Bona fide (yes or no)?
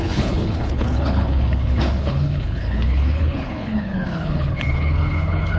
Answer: no